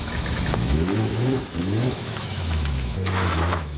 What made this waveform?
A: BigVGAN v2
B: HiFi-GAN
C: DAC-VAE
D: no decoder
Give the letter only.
C